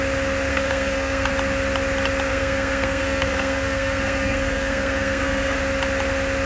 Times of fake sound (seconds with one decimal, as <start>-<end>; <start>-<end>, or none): 0.5-1.3; 2.3-5.6